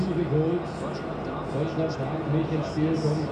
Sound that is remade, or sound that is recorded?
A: recorded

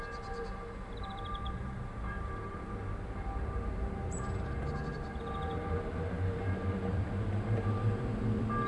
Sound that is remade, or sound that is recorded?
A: remade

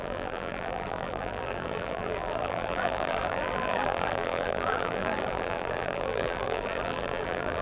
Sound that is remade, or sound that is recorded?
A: remade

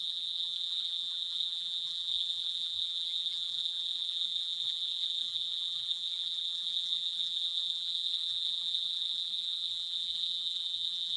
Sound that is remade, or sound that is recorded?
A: remade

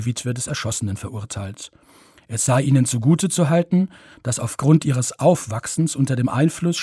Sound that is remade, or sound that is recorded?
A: remade